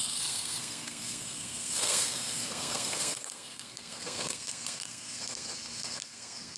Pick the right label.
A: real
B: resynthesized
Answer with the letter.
B